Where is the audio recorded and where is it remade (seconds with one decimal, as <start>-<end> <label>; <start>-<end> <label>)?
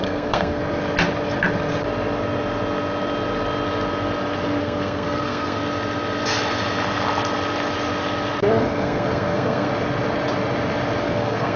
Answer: 0.0-0.6 remade; 0.6-4.6 recorded; 4.6-5.6 remade; 5.6-8.5 recorded; 8.5-9.7 remade; 9.7-11.0 recorded; 11.0-11.6 remade